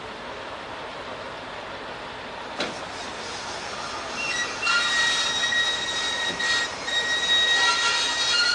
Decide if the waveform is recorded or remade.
recorded